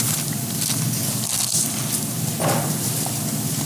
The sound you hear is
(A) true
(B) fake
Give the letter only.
A